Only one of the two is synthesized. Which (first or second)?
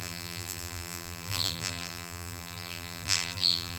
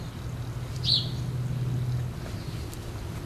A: first